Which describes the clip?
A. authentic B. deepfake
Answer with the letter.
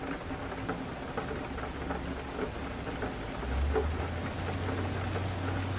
A